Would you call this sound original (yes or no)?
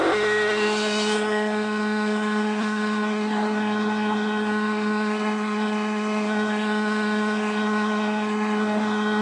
no